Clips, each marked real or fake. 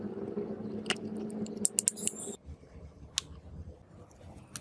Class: real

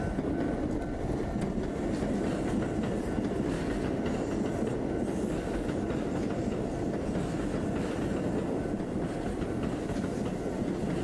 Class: real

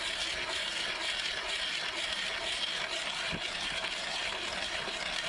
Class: real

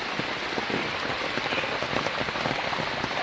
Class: real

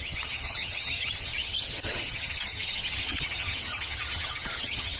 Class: fake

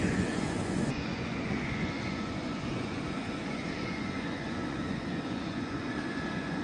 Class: fake